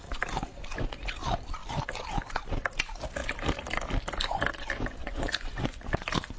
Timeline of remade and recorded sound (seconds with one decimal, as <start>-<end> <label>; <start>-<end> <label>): 0.0-5.0 recorded; 5.0-5.8 remade; 5.8-6.4 recorded